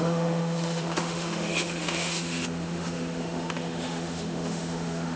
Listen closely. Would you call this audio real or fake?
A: fake